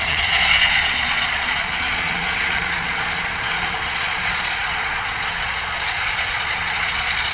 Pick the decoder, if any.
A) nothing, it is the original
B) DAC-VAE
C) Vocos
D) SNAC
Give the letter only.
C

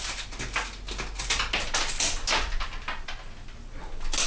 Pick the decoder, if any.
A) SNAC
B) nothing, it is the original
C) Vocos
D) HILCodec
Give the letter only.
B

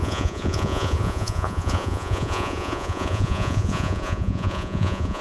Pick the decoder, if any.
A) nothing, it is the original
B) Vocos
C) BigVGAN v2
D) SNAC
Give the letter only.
B